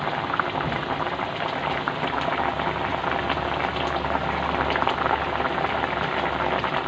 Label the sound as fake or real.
real